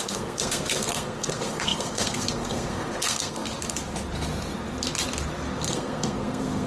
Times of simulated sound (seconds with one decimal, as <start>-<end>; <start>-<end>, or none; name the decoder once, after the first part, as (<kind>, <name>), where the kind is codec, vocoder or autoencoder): 0.0-3.4 (codec, SNAC); 5.6-6.7